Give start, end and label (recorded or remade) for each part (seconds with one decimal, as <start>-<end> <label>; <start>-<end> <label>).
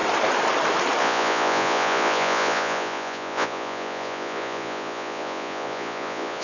0.0-1.0 recorded; 1.0-6.4 remade